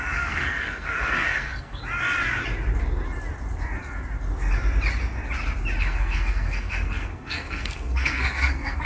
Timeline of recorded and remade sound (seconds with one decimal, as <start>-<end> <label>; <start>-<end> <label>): 0.0-1.8 remade; 1.8-5.8 recorded; 5.8-8.9 remade